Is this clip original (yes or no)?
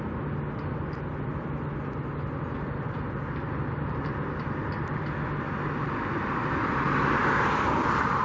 yes